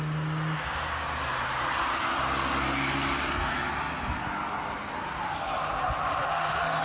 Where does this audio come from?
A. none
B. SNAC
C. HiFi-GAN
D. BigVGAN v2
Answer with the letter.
A